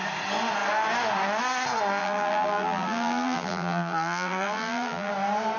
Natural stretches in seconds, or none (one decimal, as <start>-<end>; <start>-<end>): 0.0-2.0; 5.1-5.6